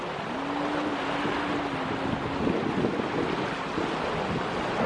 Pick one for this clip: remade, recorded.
recorded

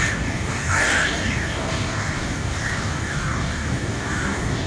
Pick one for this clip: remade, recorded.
remade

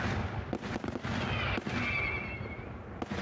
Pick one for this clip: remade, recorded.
recorded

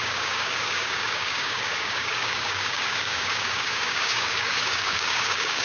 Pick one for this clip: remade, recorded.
remade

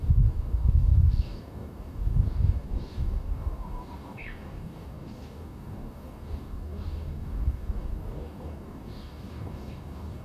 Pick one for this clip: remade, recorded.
remade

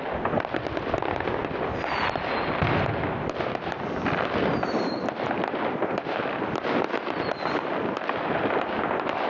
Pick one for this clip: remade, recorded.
recorded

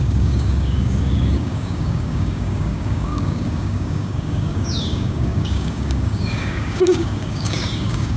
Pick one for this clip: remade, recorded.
remade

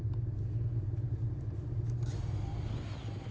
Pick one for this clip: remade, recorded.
recorded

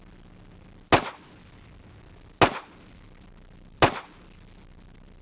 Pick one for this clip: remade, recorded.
recorded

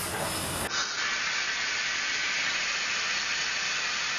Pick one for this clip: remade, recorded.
recorded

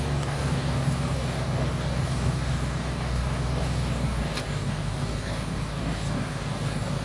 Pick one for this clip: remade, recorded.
remade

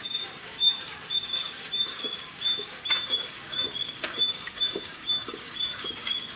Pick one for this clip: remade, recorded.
remade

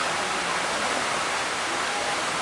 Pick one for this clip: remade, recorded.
recorded